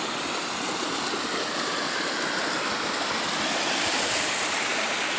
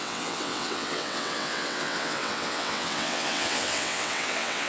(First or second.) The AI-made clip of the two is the second